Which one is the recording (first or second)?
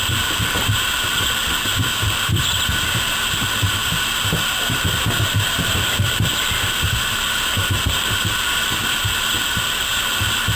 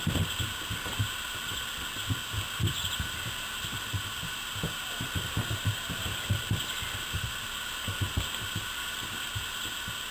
second